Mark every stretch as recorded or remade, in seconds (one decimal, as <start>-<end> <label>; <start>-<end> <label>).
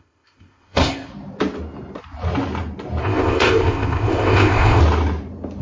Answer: 0.0-1.1 remade; 1.1-3.0 recorded; 3.0-4.8 remade; 4.8-5.6 recorded